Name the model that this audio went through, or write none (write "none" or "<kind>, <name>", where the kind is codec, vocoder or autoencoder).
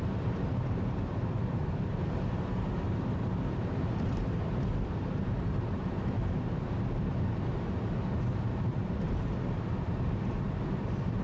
vocoder, BigVGAN v2